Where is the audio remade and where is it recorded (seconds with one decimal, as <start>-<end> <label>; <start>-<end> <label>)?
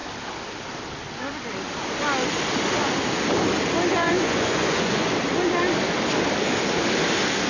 0.0-3.9 recorded; 3.9-5.1 remade; 5.1-7.5 recorded